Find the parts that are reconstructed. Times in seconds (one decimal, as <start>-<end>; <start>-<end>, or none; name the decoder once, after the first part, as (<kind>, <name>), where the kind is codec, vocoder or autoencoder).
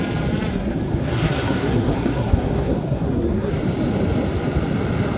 0.5-3.5 (codec, SNAC)